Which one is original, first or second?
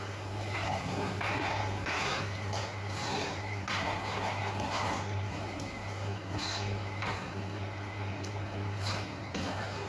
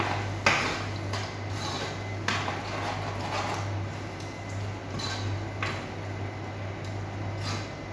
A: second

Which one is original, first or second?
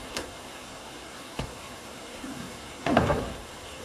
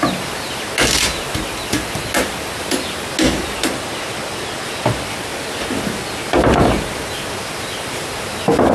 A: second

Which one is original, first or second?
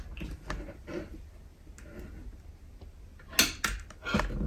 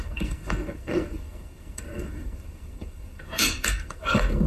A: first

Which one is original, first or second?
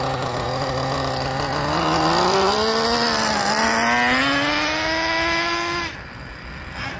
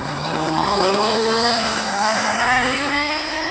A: first